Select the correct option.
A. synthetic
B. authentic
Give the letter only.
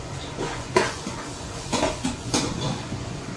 A